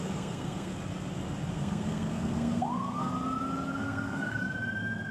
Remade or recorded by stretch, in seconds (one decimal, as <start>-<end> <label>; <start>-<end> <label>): 0.0-0.7 remade; 0.7-1.5 recorded; 1.5-3.1 remade; 3.1-3.7 recorded; 3.7-4.4 remade; 4.4-5.1 recorded